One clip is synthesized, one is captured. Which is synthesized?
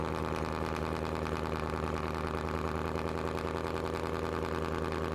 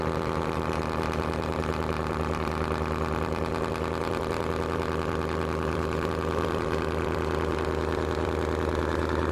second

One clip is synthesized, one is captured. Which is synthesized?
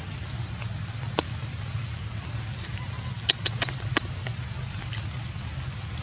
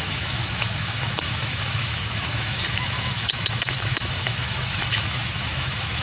second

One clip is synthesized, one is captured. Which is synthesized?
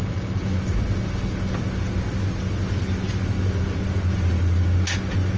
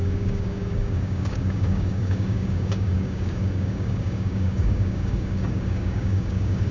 second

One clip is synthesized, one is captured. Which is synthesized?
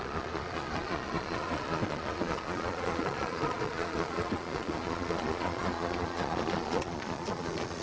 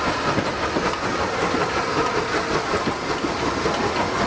first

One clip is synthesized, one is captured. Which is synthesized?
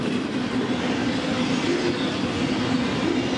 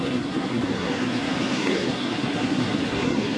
second